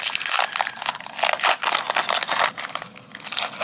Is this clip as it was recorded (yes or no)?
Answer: yes